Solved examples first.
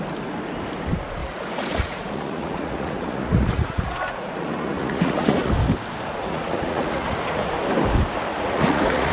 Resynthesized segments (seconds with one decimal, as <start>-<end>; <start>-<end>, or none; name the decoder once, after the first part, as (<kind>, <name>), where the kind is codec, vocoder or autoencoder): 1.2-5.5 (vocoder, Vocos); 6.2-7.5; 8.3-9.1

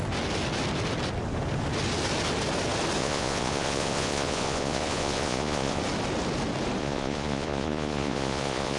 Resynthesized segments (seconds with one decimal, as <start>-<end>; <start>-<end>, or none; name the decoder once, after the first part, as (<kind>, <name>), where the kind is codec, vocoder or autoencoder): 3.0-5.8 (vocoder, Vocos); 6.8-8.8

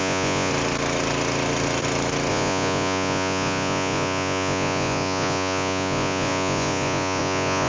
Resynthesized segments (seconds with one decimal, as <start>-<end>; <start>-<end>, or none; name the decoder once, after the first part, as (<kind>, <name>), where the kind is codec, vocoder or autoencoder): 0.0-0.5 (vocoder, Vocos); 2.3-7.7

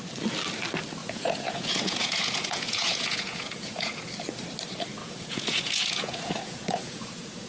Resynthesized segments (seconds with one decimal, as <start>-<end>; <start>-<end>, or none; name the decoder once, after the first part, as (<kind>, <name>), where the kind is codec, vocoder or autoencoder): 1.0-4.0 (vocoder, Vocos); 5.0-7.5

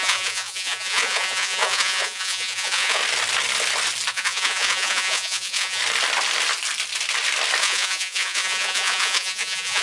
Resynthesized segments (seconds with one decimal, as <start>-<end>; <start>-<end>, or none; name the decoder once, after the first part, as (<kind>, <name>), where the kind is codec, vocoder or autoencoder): 0.0-3.0 (vocoder, Vocos); 4.1-5.8; 7.6-9.8

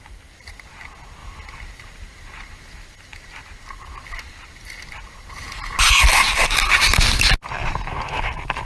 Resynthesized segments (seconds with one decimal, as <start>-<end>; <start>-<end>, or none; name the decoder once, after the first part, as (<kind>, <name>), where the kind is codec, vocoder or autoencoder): none

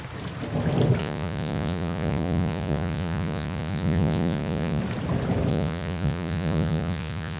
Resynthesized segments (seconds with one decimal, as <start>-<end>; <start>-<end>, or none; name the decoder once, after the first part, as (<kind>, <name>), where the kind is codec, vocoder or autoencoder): 1.0-4.8 (vocoder, Vocos); 5.5-7.4

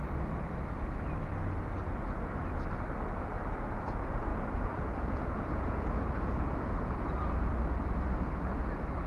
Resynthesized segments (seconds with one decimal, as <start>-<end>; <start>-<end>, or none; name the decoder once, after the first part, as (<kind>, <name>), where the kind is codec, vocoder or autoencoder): 3.8-7.5 (vocoder, Vocos)